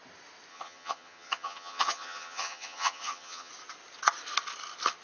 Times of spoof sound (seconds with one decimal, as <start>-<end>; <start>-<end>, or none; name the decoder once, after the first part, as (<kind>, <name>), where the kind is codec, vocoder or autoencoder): 0.5-3.5 (vocoder, HiFi-GAN)

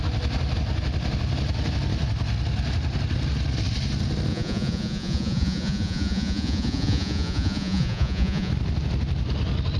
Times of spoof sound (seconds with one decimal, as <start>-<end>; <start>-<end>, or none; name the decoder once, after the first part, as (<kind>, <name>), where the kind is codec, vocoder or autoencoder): 4.3-8.5 (vocoder, Vocos)

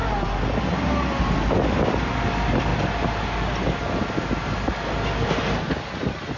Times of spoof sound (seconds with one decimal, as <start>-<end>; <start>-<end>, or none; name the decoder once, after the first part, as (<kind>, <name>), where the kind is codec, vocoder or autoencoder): none

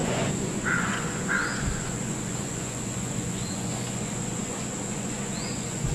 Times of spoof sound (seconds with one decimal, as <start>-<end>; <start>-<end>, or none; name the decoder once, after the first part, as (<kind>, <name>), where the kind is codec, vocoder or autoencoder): 0.0-5.9 (vocoder, Vocos)

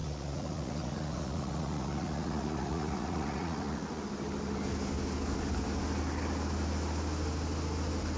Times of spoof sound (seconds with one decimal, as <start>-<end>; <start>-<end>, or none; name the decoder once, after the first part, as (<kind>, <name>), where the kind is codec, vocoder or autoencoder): 0.0-4.0 (vocoder, Vocos)